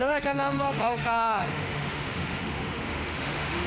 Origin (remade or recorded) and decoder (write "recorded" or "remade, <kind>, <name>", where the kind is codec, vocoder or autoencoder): remade, autoencoder, DAC-VAE